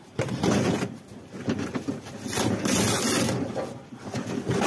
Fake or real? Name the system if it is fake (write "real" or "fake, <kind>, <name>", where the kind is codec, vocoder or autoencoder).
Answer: real